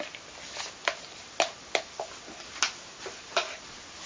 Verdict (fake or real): real